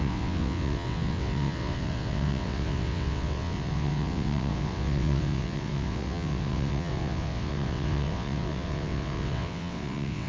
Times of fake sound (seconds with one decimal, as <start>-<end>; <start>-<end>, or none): 0.0-10.3